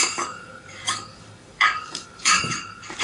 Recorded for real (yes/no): no